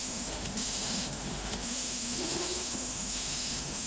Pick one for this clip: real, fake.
fake